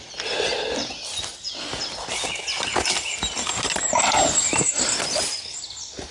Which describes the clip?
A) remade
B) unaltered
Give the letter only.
B